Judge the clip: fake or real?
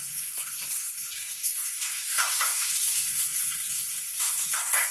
fake